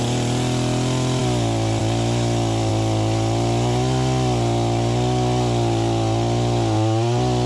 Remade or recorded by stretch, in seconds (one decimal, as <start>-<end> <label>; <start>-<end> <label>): 0.0-7.5 recorded